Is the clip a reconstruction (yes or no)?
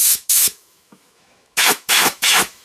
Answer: yes